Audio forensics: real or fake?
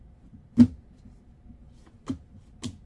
real